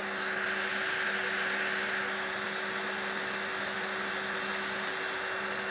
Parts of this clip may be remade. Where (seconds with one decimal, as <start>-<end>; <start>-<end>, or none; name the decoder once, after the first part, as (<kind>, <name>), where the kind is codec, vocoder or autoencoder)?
none